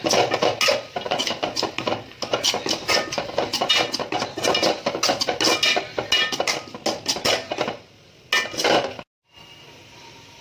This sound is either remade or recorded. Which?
recorded